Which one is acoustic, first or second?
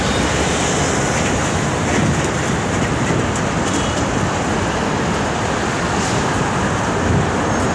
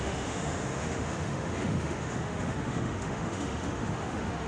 first